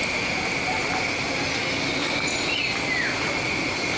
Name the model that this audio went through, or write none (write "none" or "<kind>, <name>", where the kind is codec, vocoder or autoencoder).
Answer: none